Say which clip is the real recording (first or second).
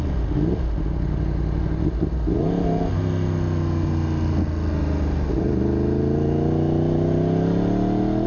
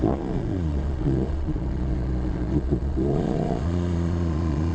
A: first